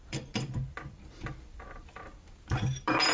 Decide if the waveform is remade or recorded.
remade